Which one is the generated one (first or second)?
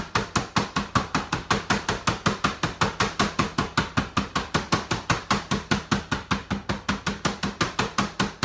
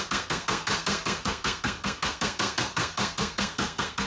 second